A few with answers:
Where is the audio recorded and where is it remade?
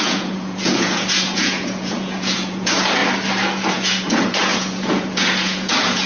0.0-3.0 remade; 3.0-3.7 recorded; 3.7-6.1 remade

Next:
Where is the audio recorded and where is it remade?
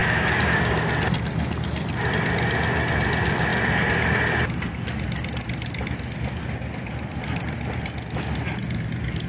0.0-0.8 remade; 0.8-9.3 recorded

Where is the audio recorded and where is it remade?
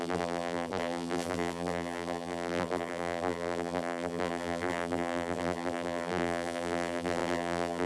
0.0-7.9 remade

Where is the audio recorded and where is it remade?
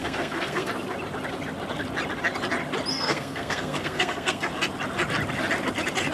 0.0-0.7 remade; 0.7-2.9 recorded; 2.9-4.5 remade; 4.5-6.1 recorded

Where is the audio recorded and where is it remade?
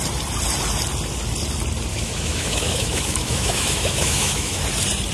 0.0-1.9 recorded; 1.9-4.6 remade; 4.6-5.1 recorded